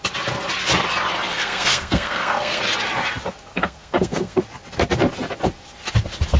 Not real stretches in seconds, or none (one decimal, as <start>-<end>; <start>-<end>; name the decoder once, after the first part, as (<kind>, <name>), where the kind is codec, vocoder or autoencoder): 1.3-2.6 (codec, SNAC); 3.5-4.4